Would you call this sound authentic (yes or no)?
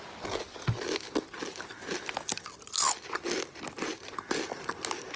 yes